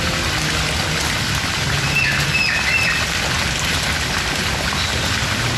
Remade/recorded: recorded